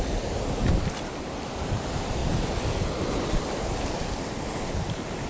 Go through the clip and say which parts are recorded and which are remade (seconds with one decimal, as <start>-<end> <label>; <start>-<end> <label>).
0.0-2.2 remade; 2.2-4.7 recorded; 4.7-5.3 remade